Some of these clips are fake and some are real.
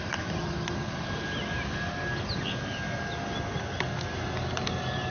real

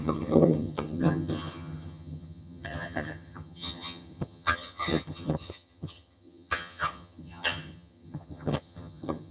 fake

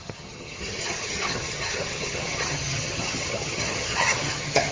fake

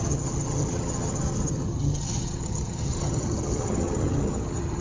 fake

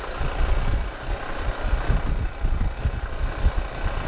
real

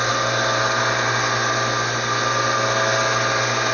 real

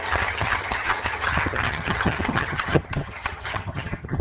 fake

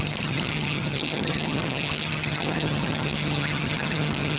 fake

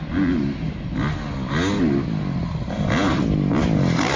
real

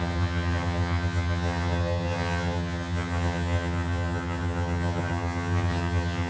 fake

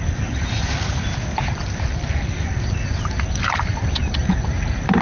real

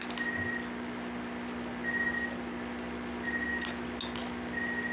real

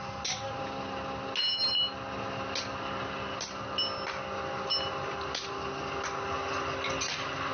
real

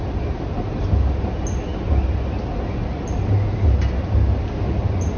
real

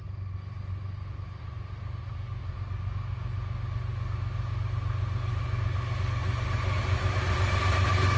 real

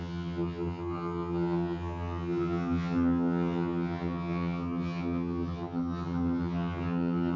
fake